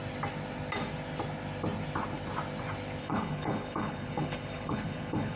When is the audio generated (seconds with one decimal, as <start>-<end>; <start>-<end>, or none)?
3.0-5.4